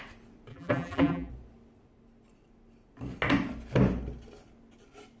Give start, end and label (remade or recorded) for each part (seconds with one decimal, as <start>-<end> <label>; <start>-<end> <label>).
0.0-0.5 recorded; 0.5-1.3 remade; 1.3-5.2 recorded